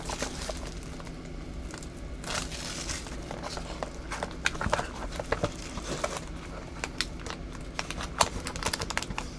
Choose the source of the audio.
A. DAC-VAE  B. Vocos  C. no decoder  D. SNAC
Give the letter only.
C